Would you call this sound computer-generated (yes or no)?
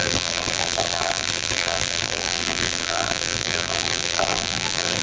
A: yes